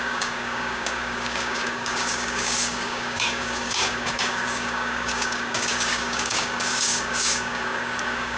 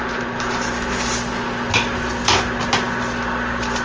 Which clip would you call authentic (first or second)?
second